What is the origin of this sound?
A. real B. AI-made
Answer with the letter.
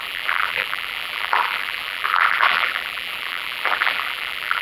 B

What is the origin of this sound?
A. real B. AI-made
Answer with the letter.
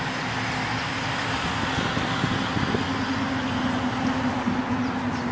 A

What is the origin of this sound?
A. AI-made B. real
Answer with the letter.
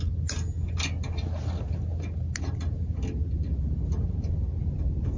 B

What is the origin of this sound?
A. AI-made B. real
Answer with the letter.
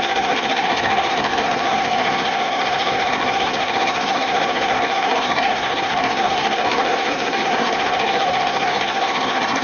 A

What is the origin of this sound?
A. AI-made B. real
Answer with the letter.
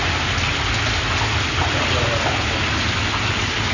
B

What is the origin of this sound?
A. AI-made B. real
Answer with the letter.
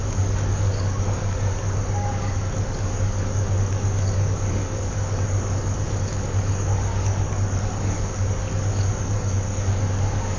A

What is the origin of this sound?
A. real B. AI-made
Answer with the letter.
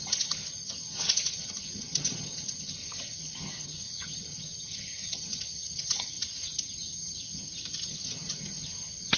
B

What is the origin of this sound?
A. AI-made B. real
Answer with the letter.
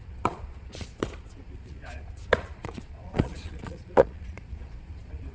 A